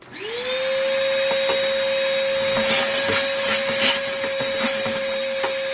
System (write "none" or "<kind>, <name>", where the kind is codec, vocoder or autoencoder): none